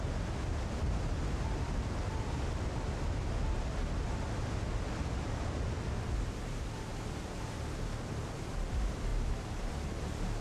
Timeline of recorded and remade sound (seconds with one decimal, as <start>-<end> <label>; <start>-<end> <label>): 0.0-9.1 recorded; 9.1-9.7 remade; 9.7-10.4 recorded